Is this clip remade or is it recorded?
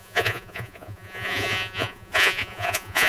remade